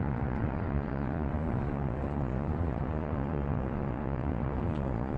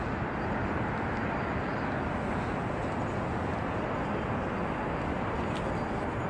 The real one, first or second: second